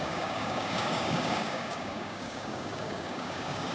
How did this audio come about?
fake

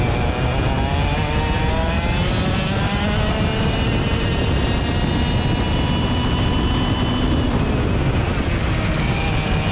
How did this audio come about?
real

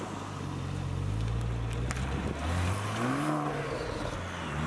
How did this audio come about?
real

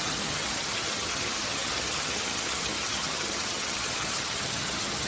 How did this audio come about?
fake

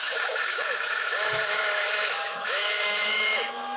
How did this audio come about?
fake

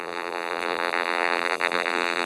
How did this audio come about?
fake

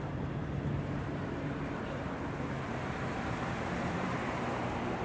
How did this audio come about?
fake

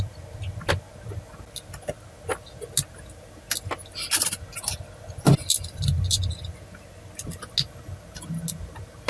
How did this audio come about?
real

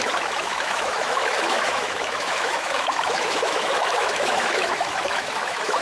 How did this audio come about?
fake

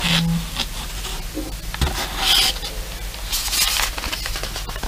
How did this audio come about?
real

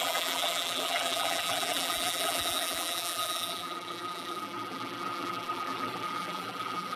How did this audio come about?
fake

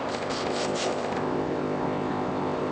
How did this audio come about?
fake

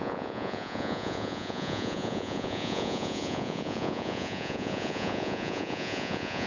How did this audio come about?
fake